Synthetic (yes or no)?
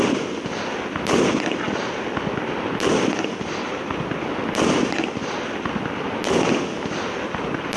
no